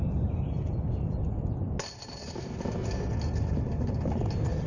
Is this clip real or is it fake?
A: real